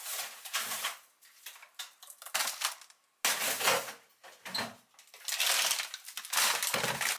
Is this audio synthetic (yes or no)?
no